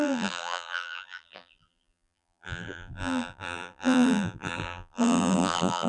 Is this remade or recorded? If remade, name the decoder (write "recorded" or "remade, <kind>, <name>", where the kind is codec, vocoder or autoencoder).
remade, vocoder, BigVGAN v2